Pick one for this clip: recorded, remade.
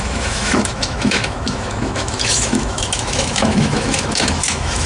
remade